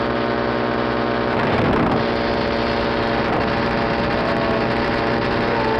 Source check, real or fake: real